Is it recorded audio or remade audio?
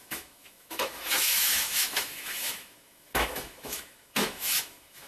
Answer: remade